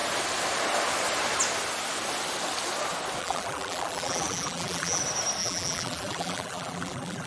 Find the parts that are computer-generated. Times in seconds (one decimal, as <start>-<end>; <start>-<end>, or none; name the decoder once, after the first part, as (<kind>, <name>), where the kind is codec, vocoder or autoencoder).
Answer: 3.2-5.0 (vocoder, BigVGAN v2); 5.4-7.3